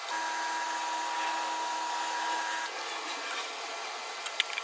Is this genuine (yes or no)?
yes